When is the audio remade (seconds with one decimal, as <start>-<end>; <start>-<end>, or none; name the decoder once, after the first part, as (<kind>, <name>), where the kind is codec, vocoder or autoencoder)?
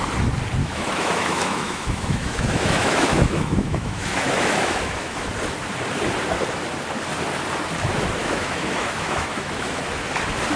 0.6-5.3 (autoencoder, DAC-VAE); 8.2-9.8